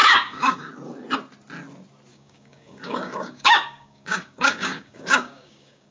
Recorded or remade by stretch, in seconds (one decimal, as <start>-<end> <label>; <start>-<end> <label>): 0.0-0.7 remade; 0.7-2.1 recorded; 2.1-5.9 remade